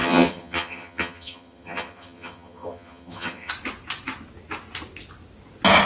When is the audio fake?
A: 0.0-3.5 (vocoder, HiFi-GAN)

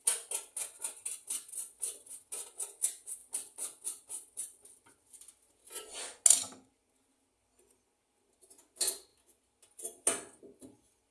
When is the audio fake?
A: none

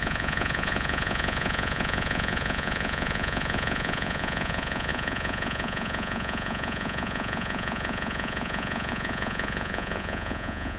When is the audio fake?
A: 0.0-10.8 (vocoder, Vocos)

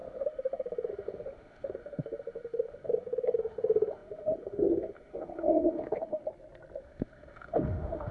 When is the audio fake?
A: 0.0-6.2 (autoencoder, DAC-VAE); 6.8-8.1

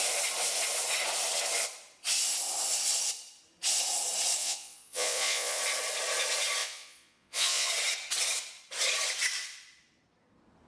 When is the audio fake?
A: 4.4-5.6 (vocoder, Vocos); 6.6-7.7

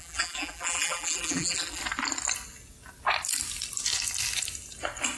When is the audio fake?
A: 0.0-1.8 (vocoder, BigVGAN v2)

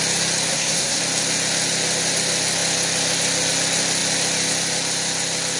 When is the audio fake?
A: 0.5-1.0 (codec, SNAC)

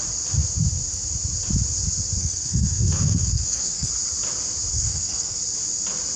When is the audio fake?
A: 2.2-3.9 (codec, SNAC); 4.7-5.4